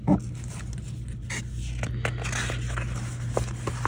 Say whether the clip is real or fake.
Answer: real